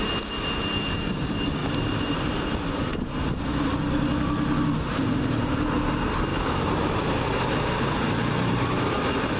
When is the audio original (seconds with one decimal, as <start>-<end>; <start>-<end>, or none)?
0.0-1.6; 2.3-2.9; 3.7-6.3; 8.9-9.4